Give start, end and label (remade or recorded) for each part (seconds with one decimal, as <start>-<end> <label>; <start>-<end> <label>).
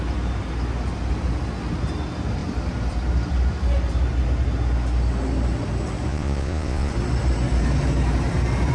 0.0-6.1 recorded; 6.1-6.9 remade; 6.9-8.7 recorded